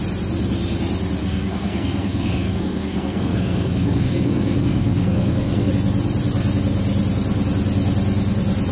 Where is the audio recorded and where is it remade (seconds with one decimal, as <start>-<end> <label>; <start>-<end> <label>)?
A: 0.0-1.2 recorded; 1.2-5.7 remade; 5.7-8.7 recorded